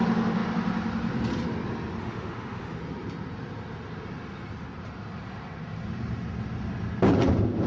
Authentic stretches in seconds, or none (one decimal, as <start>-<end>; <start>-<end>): 0.0-2.0; 2.8-7.7